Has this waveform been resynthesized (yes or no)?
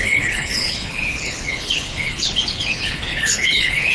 yes